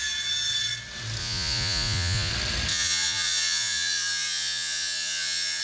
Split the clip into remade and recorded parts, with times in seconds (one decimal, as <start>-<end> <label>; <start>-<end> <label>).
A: 0.0-1.2 recorded; 1.2-2.3 remade; 2.3-2.7 recorded; 2.7-5.6 remade